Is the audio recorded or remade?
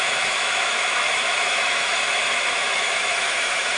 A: remade